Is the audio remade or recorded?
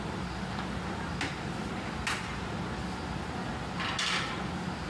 recorded